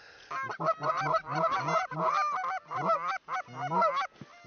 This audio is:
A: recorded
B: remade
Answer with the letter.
A